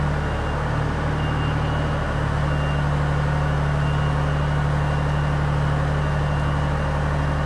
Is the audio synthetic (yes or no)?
no